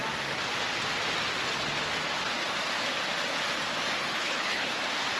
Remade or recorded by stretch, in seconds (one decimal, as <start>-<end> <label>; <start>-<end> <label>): 0.0-4.0 recorded; 4.0-4.8 remade; 4.8-5.2 recorded